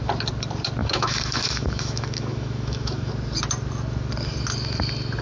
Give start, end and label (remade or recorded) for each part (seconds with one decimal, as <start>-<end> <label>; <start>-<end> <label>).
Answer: 0.0-0.8 recorded; 0.8-3.1 remade; 3.1-5.2 recorded